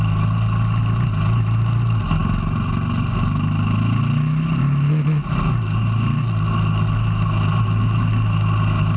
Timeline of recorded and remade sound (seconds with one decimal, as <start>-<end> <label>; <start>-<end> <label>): 0.0-9.0 recorded